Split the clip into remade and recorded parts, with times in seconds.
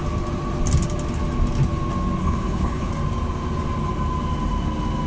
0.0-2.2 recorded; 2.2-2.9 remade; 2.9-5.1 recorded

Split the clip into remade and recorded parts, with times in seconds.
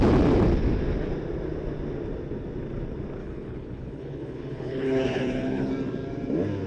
0.0-3.2 recorded; 3.2-5.7 remade; 5.7-6.7 recorded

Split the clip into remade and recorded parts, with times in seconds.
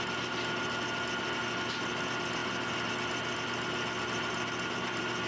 0.0-5.3 recorded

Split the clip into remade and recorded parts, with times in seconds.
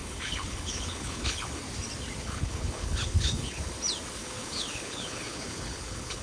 0.0-1.6 remade; 1.6-2.2 recorded; 2.2-3.7 remade; 3.7-4.2 recorded; 4.2-6.2 remade